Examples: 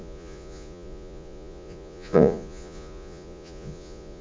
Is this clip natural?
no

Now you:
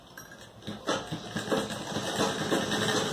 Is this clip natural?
yes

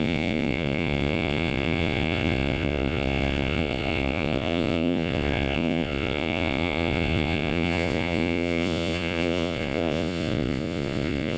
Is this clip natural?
no